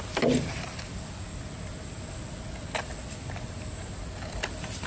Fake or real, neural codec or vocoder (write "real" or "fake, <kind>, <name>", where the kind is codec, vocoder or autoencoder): real